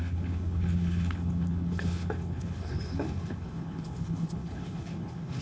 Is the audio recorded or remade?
remade